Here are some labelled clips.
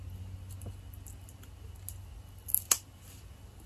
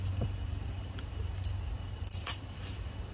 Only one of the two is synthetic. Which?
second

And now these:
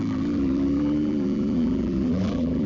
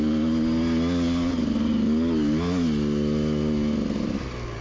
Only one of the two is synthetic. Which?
first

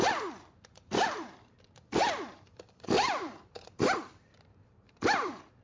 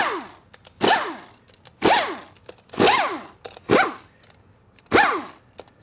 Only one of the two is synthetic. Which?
first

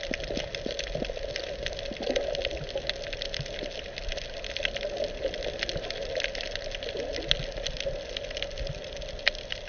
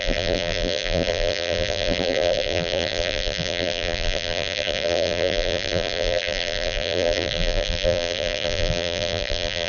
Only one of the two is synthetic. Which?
second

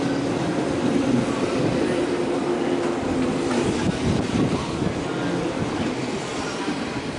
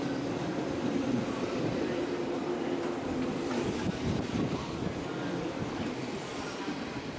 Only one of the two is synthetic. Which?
second